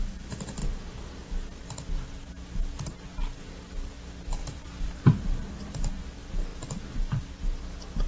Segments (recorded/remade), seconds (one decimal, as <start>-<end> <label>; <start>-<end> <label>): 0.0-4.4 recorded; 4.4-4.9 remade; 4.9-6.5 recorded; 6.5-7.2 remade; 7.2-8.1 recorded